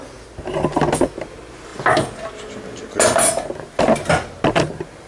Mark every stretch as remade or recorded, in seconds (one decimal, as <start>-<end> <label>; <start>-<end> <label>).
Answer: 0.0-5.1 recorded